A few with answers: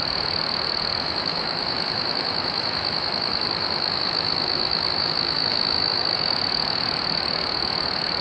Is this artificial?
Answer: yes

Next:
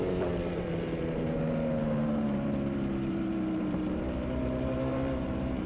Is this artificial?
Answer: yes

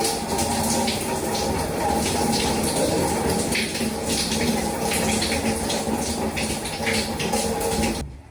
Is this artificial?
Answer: no